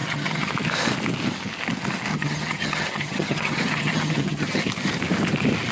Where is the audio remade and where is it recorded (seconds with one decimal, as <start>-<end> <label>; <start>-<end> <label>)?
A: 0.0-0.5 remade; 0.5-2.1 recorded; 2.1-4.6 remade; 4.6-5.7 recorded